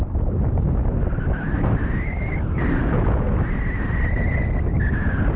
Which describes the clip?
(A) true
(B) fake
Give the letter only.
A